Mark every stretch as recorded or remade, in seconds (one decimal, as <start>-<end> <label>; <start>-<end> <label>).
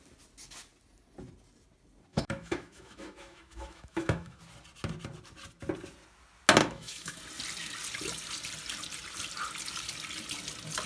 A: 0.0-2.1 recorded; 2.1-4.4 remade; 4.4-6.6 recorded; 6.6-7.2 remade; 7.2-10.9 recorded